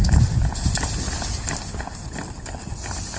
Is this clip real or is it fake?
real